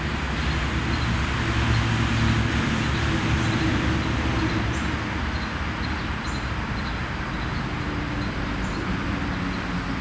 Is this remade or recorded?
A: recorded